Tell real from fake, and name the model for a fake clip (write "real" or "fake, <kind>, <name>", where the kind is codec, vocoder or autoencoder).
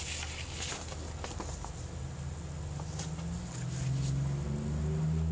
real